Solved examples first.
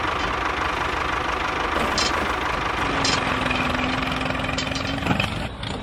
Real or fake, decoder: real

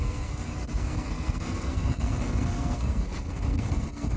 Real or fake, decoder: fake, codec, SNAC